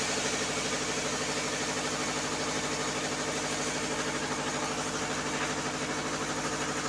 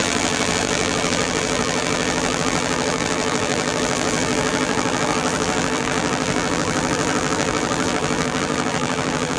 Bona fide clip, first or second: first